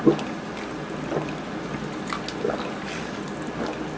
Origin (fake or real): real